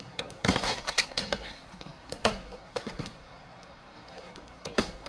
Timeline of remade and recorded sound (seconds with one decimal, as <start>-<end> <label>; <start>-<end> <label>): 0.0-5.1 remade